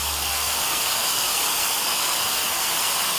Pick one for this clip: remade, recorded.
remade